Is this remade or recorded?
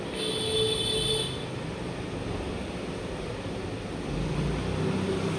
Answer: recorded